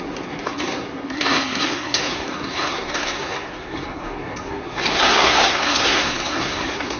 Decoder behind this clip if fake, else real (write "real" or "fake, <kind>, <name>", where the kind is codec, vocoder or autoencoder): fake, codec, SNAC